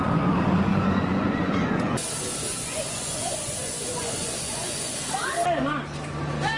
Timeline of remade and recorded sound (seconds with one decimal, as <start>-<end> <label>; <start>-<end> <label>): 0.0-0.7 recorded; 0.7-2.1 remade; 2.1-2.5 recorded; 2.5-5.0 remade; 5.0-6.6 recorded